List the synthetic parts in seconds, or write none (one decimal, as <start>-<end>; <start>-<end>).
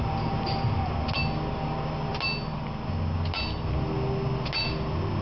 none